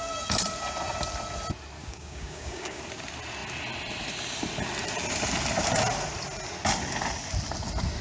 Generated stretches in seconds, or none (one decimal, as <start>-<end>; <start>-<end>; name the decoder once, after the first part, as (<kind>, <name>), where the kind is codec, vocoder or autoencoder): 1.8-2.8 (codec, DAC)